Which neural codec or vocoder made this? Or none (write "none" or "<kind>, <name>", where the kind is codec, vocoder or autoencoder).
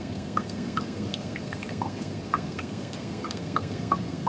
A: codec, SNAC